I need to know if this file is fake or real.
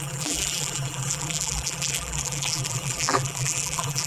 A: fake